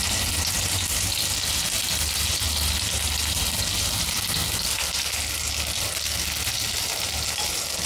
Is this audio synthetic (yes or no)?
no